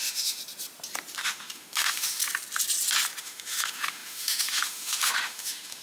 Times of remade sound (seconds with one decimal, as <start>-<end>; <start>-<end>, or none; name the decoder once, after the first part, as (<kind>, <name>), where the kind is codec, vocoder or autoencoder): 0.0-0.4 (autoencoder, DAC-VAE); 1.2-2.2; 3.2-5.8